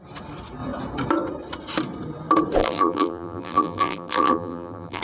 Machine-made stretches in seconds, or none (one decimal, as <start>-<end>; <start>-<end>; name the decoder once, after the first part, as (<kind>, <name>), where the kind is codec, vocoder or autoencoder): 2.6-5.0 (vocoder, BigVGAN v2)